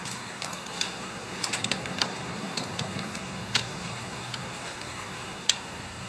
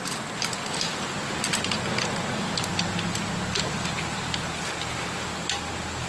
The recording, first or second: second